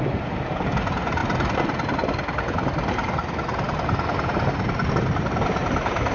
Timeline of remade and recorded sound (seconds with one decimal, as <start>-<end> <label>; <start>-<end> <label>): 0.0-6.1 recorded